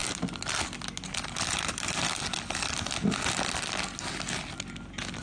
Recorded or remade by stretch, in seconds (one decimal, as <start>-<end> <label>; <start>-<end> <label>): 0.0-5.2 recorded